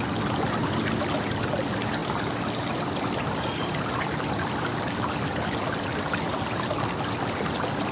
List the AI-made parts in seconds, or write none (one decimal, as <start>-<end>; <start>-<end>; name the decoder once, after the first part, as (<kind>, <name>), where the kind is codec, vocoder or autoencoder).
none